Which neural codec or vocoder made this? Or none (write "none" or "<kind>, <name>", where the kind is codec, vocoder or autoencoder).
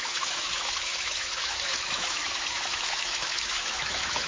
autoencoder, DAC-VAE